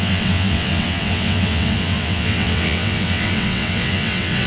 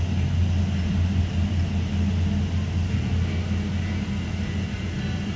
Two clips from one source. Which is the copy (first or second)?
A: first